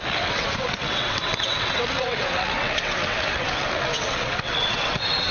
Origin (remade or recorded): remade